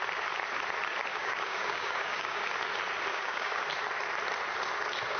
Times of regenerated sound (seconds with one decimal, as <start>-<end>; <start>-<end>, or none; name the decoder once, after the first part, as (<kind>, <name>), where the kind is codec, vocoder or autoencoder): 1.1-2.4 (codec, DAC); 3.1-3.6